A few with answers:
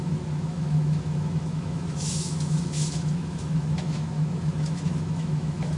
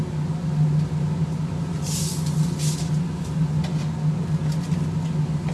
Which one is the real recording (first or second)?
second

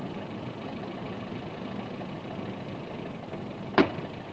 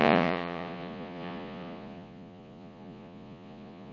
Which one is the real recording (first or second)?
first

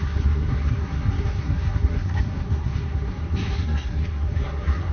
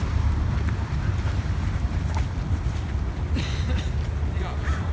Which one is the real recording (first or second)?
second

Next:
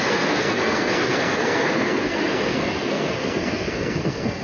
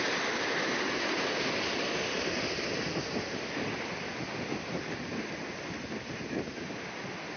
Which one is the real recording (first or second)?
second